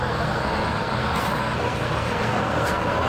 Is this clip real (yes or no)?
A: no